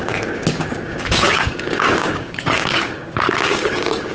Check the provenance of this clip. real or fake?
fake